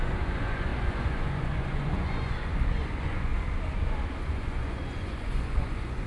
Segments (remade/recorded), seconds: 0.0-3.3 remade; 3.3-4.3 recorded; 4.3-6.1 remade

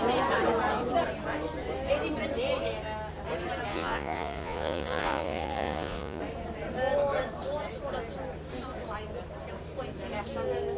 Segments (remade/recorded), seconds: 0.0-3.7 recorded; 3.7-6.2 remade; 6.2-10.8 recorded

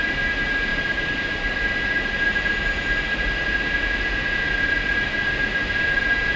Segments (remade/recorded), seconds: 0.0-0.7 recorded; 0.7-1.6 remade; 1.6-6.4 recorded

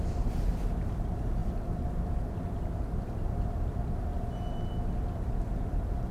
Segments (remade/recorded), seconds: 0.0-6.1 recorded